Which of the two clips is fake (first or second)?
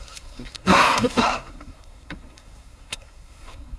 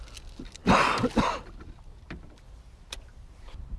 first